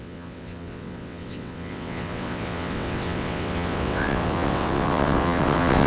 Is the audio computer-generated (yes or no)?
yes